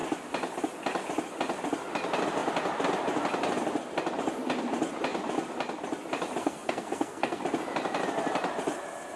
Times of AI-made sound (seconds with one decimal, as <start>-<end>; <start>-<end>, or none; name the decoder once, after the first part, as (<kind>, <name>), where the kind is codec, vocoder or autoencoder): 6.4-7.4 (codec, SNAC)